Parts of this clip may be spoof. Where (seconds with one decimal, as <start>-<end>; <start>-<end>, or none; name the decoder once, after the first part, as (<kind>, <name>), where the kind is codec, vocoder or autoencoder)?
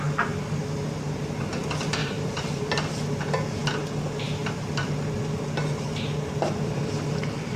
2.0-2.6 (vocoder, BigVGAN v2)